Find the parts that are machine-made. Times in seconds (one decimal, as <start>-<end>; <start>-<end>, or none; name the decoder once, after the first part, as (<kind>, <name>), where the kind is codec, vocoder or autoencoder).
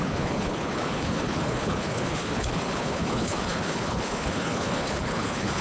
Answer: 0.0-5.6 (codec, HILCodec)